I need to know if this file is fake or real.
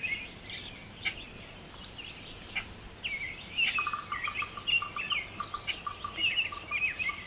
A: real